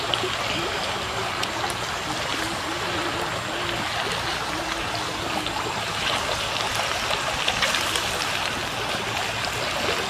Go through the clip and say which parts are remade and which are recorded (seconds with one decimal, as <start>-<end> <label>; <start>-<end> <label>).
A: 0.0-2.3 recorded; 2.3-3.1 remade; 3.1-6.7 recorded; 6.7-8.5 remade; 8.5-10.1 recorded